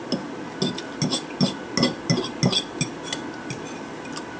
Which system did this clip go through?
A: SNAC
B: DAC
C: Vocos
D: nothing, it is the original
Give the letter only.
D